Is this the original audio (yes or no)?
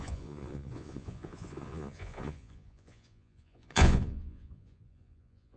no